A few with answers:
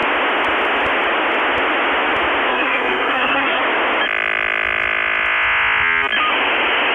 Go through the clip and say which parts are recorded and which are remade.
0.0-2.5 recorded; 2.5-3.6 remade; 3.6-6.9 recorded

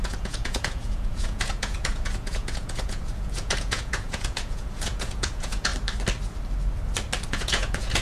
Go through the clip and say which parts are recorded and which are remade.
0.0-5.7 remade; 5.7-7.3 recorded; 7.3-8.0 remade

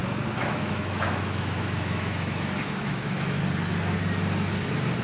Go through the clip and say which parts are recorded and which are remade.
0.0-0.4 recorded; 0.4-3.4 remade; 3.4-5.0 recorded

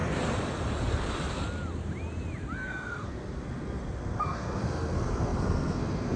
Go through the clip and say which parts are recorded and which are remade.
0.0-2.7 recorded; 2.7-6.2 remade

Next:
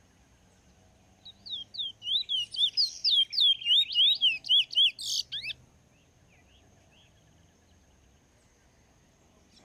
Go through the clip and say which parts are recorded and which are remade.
0.0-9.6 recorded